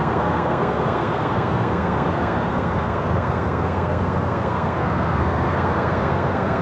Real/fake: fake